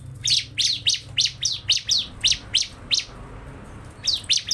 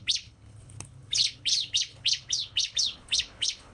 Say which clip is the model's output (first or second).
second